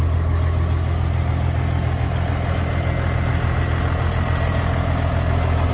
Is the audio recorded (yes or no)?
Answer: yes